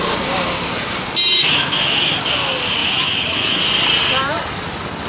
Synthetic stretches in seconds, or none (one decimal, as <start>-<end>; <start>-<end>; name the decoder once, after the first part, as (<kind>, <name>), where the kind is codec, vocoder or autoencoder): 1.4-2.2 (autoencoder, DAC-VAE); 2.8-3.6